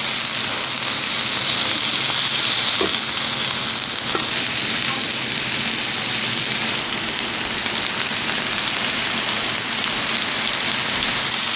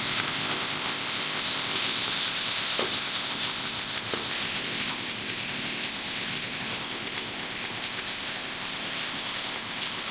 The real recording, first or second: first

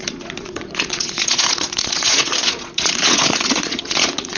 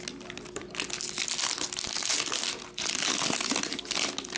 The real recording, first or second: second